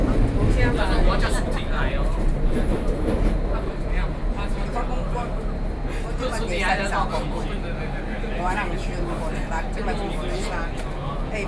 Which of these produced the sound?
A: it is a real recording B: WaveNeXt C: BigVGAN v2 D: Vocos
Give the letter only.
A